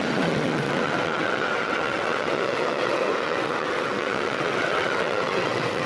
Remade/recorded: remade